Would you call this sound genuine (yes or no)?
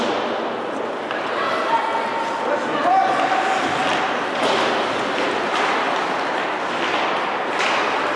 yes